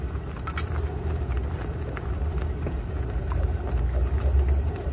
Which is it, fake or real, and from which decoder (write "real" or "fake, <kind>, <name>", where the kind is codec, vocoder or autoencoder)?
real